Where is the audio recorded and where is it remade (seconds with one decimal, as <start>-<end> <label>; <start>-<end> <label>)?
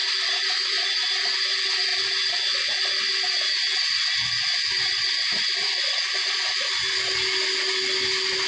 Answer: 0.0-8.5 recorded